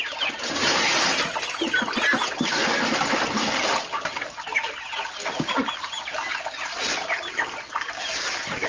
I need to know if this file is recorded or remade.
recorded